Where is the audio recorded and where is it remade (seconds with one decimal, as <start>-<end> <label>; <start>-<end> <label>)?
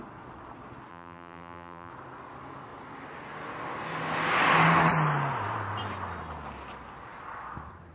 0.0-0.9 recorded; 0.9-1.9 remade; 1.9-7.9 recorded